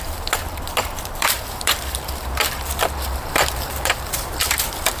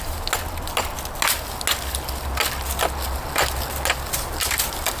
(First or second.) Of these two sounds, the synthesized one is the first